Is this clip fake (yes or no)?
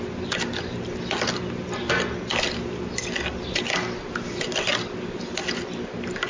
no